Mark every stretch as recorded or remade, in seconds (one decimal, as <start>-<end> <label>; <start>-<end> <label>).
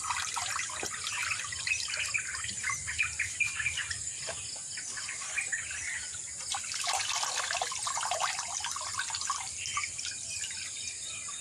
0.0-11.4 recorded